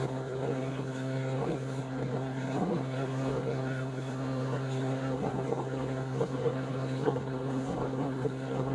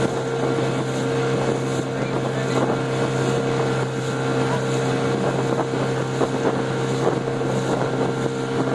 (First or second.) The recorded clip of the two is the second